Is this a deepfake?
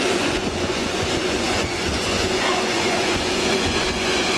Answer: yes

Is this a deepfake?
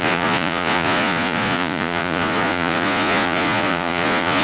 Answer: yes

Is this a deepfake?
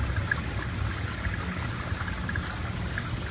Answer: no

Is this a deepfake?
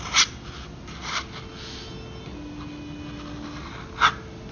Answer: no